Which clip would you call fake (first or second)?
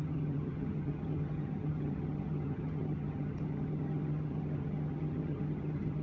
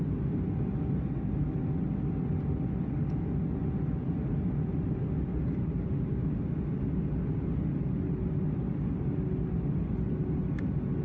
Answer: first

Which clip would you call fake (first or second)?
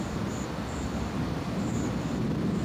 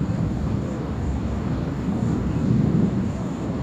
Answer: second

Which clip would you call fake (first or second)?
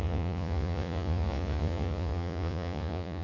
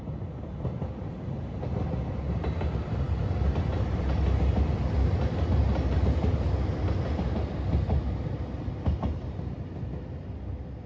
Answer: first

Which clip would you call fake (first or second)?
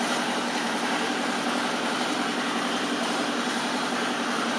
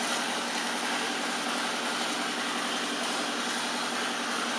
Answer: first